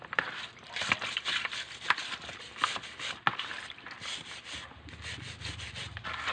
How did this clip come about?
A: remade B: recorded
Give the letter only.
B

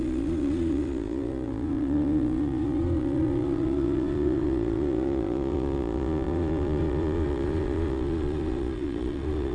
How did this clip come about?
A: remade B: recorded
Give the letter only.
A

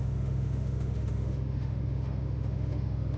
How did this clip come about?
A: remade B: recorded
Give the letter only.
A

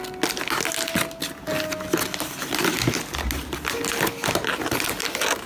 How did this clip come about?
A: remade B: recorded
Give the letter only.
B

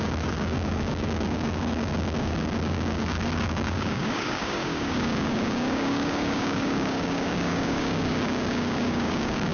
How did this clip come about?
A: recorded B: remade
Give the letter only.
B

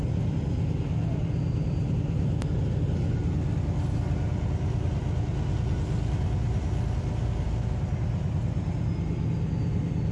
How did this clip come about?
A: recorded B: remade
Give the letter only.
A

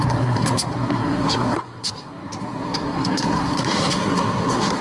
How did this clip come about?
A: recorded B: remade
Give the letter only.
B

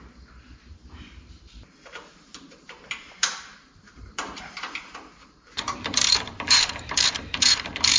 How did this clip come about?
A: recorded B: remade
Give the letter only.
B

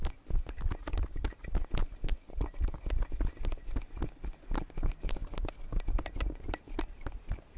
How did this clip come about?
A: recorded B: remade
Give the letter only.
A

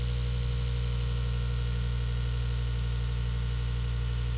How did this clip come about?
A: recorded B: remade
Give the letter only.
B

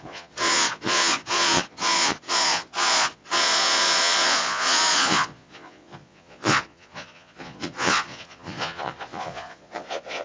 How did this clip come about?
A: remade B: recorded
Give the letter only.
A